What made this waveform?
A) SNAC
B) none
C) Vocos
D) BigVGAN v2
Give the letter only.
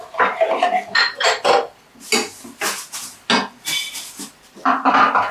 B